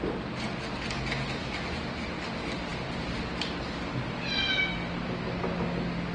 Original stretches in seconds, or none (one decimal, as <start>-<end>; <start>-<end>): 0.0-6.1

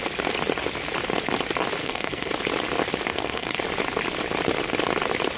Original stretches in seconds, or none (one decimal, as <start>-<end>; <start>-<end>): 0.0-1.8; 2.3-3.1; 3.6-5.4